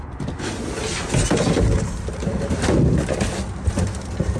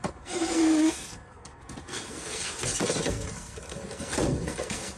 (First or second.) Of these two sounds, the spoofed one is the second